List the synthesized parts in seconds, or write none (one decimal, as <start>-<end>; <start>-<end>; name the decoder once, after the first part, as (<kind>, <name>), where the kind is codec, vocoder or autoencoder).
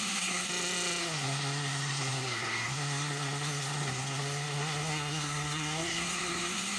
0.0-0.5 (codec, SNAC); 1.0-6.8